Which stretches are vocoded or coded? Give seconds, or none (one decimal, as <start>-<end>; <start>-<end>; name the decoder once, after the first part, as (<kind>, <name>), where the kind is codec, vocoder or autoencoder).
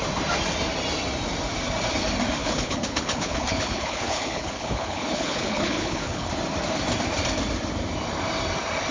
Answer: 2.4-6.3 (codec, HILCodec)